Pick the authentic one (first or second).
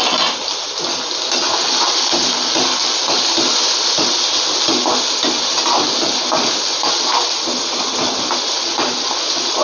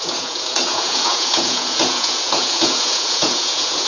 first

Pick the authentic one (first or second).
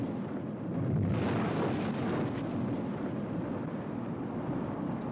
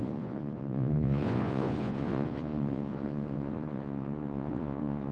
first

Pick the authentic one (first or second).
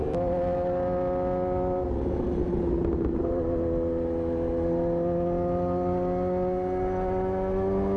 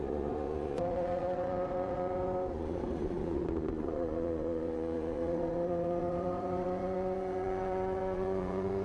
first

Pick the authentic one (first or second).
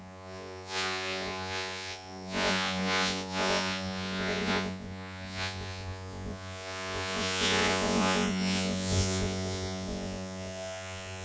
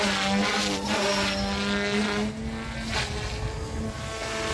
second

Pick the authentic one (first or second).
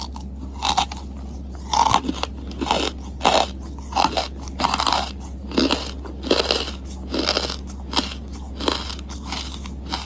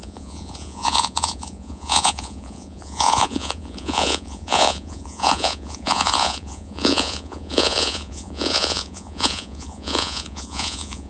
first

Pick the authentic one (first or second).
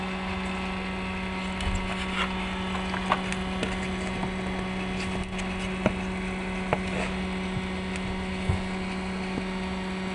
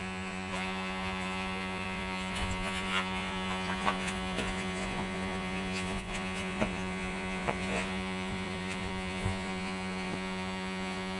first